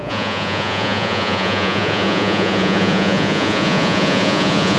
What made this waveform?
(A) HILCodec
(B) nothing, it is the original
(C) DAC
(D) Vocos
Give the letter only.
D